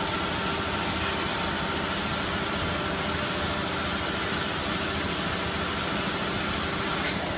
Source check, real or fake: real